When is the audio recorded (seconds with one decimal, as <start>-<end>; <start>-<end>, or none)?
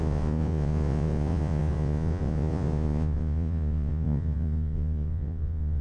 none